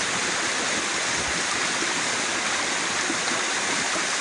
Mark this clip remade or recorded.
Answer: recorded